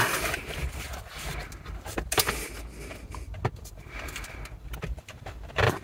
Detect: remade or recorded recorded